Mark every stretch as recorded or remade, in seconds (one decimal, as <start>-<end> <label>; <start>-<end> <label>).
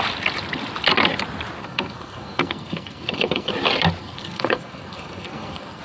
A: 0.0-1.6 recorded; 1.6-3.5 remade; 3.5-4.0 recorded; 4.0-5.8 remade